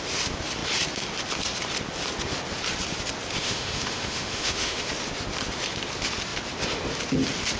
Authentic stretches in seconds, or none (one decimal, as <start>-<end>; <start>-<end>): 0.0-3.4; 4.9-7.6